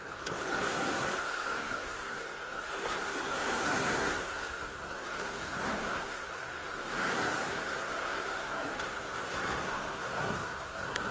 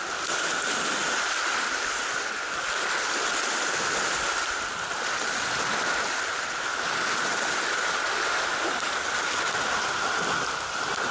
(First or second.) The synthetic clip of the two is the first